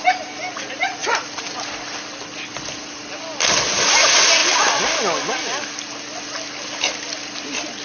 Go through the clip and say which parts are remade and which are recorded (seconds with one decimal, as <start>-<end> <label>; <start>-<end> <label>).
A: 0.0-7.8 recorded